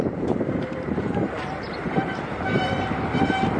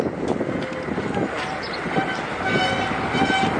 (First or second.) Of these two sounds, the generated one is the first